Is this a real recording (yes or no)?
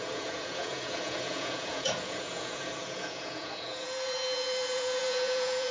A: no